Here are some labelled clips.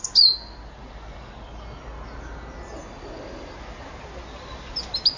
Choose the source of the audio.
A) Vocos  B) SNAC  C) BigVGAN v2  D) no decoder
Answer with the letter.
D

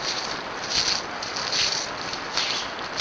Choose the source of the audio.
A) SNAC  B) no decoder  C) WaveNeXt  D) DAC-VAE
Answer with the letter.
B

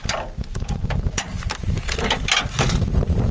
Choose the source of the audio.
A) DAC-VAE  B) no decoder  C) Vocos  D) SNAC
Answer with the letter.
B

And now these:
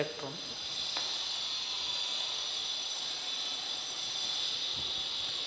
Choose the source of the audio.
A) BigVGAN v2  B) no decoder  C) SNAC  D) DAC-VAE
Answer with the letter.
B